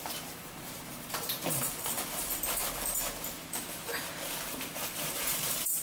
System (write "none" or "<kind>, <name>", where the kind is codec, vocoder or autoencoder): vocoder, BigVGAN v2